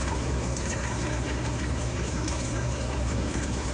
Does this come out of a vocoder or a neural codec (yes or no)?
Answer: yes